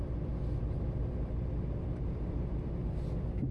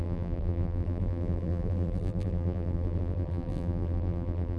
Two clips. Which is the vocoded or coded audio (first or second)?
second